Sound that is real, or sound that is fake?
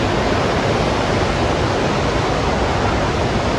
real